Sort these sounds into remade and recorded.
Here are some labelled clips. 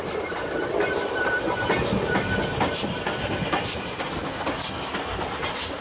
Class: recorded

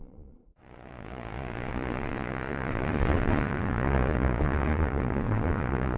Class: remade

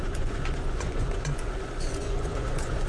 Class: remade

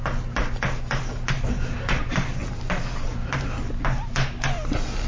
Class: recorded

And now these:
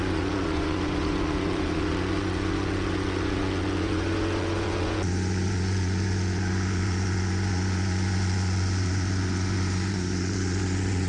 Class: remade